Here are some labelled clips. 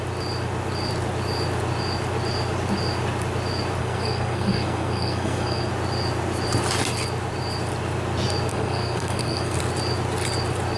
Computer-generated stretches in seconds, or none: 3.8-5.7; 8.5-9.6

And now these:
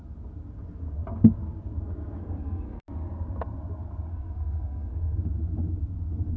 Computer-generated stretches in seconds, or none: 2.2-2.8; 4.1-5.2

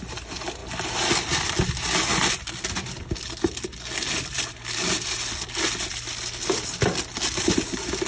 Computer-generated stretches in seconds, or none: none

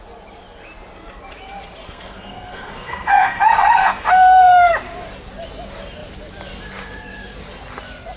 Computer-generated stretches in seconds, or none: 1.8-4.7

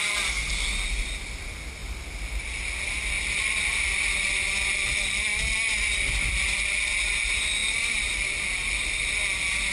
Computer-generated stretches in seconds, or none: none

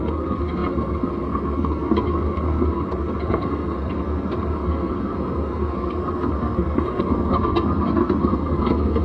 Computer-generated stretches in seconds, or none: 0.0-9.0

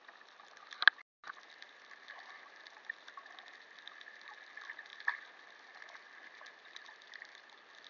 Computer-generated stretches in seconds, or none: none

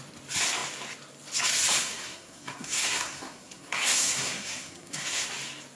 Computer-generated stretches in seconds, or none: 1.8-5.3